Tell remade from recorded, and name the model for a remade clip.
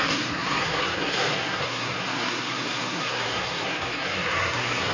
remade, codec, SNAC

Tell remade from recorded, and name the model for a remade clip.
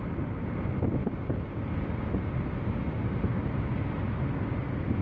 recorded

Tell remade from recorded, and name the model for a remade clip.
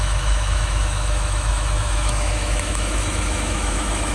remade, autoencoder, DAC-VAE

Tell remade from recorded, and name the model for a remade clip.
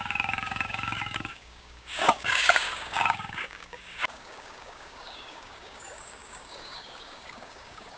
remade, codec, DAC